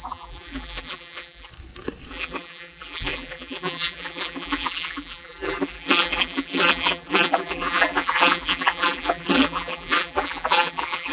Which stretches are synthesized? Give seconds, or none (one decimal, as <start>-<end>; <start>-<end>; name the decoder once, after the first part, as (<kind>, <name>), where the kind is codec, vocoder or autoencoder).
0.0-1.5 (vocoder, BigVGAN v2); 2.1-11.1